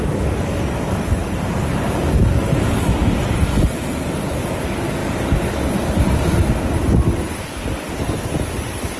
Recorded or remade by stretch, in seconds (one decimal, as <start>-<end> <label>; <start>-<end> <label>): 0.0-1.2 recorded; 1.2-2.8 remade; 2.8-5.0 recorded; 5.0-6.5 remade; 6.5-9.0 recorded